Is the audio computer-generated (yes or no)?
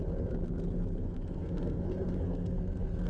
yes